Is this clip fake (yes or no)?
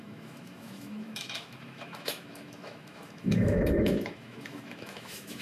yes